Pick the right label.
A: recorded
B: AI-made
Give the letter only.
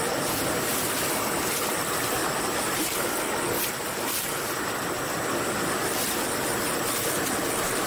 A